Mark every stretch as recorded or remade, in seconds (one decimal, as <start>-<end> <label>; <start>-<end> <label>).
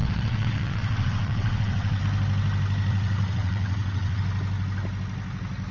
0.0-2.0 remade; 2.0-2.9 recorded; 2.9-4.2 remade; 4.2-5.7 recorded